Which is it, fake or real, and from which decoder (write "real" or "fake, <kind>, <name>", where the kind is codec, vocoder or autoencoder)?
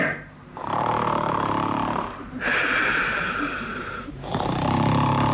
fake, vocoder, BigVGAN v2